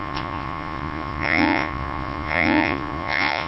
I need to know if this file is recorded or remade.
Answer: remade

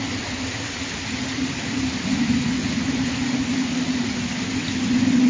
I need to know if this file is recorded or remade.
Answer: recorded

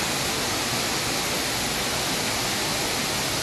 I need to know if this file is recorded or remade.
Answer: recorded